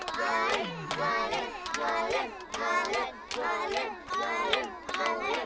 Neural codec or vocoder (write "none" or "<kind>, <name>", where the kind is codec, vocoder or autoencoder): none